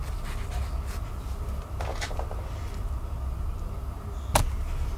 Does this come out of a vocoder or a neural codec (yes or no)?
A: no